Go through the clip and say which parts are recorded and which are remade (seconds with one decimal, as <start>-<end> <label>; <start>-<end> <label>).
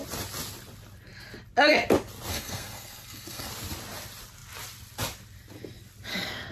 0.0-2.3 recorded; 2.3-3.5 remade; 3.5-6.5 recorded